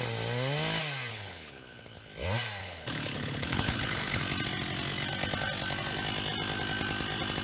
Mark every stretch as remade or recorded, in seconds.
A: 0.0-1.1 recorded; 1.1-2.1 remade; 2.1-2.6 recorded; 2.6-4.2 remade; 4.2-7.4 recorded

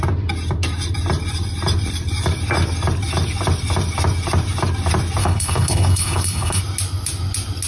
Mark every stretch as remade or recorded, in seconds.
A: 0.0-5.2 recorded; 5.2-6.6 remade; 6.6-7.7 recorded